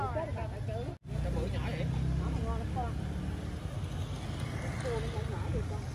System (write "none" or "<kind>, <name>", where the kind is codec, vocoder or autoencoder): none